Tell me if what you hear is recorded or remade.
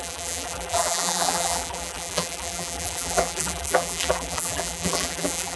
remade